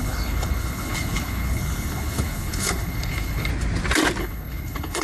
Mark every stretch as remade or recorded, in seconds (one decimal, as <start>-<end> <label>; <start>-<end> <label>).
0.0-3.5 remade; 3.5-4.2 recorded; 4.2-5.0 remade